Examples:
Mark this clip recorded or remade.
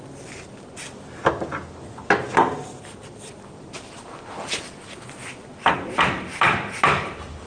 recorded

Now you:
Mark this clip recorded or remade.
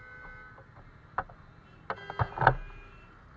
recorded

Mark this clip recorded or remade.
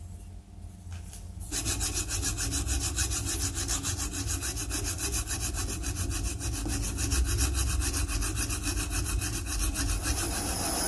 recorded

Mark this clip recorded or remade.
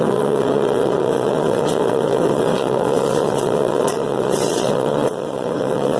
remade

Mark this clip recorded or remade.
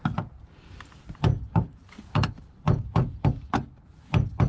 recorded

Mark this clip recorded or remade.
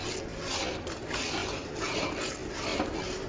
recorded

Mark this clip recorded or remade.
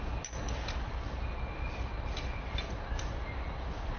recorded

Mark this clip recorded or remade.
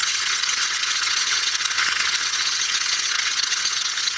remade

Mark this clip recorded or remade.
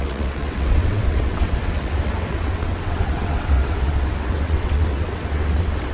remade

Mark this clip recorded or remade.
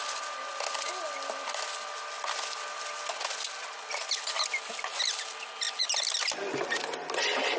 recorded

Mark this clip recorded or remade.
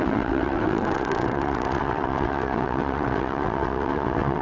remade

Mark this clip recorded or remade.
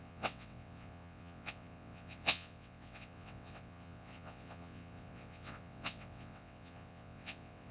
remade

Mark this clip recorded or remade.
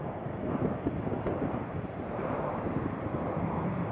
recorded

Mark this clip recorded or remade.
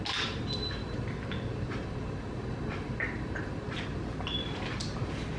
recorded